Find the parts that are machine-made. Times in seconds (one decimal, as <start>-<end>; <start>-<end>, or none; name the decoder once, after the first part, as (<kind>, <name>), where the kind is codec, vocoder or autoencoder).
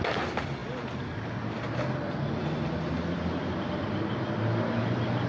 none